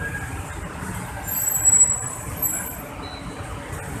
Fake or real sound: real